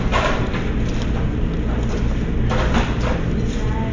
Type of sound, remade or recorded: recorded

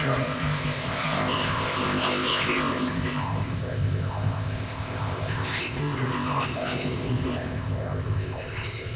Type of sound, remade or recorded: remade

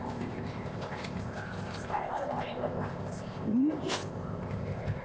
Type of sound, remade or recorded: remade